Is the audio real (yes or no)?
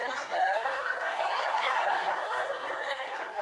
no